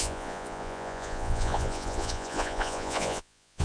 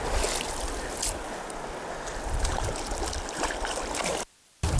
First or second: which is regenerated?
first